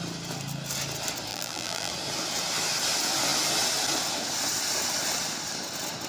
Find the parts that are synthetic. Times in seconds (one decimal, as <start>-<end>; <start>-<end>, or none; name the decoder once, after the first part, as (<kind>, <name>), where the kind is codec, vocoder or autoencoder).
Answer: 1.3-1.9 (vocoder, BigVGAN v2)